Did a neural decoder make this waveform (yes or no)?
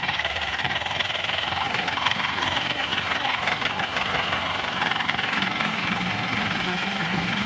yes